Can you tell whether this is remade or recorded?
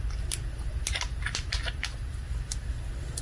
recorded